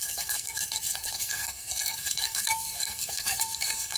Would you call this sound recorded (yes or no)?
no